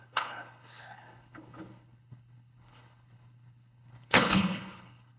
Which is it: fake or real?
fake